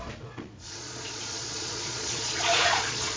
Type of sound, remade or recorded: remade